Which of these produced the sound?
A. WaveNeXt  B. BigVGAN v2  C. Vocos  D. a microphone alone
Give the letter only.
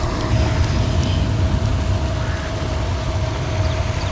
D